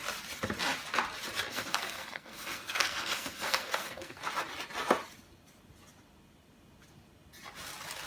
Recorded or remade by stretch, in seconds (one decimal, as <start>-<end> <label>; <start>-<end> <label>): 0.0-1.5 recorded; 1.5-4.2 remade; 4.2-8.1 recorded